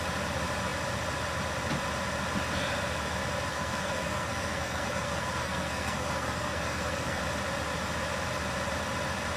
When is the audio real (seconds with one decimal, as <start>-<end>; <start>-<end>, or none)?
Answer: 0.0-3.5; 7.2-9.4

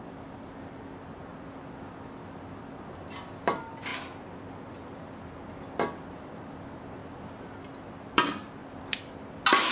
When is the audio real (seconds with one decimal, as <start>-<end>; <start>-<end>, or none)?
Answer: 3.9-6.1; 7.0-8.1; 8.6-9.7

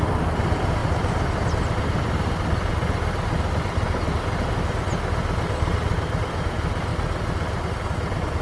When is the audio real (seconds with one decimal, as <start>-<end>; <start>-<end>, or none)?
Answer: 0.0-8.4

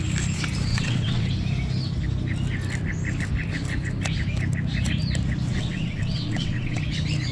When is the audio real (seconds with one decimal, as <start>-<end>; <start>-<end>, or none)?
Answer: 0.0-0.7; 1.3-5.5; 6.8-7.3

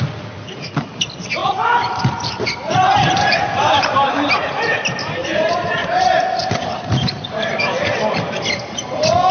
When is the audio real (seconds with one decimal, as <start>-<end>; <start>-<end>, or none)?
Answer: 0.0-1.4; 4.6-5.2; 7.5-9.3

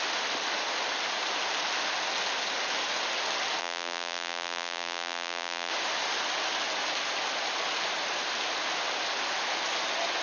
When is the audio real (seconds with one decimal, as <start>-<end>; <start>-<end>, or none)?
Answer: 0.0-3.6; 5.7-10.2